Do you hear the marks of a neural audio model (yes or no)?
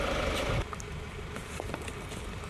no